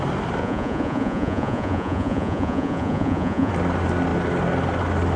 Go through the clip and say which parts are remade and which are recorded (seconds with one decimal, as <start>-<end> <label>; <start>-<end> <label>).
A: 0.0-0.4 recorded; 0.4-3.5 remade; 3.5-5.2 recorded